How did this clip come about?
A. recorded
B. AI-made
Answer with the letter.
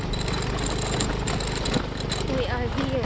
A